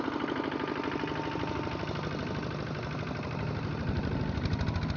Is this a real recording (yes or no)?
yes